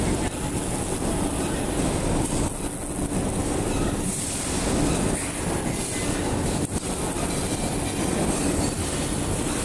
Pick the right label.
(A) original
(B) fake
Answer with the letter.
A